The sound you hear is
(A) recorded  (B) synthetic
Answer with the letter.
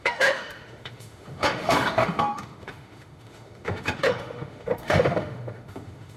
B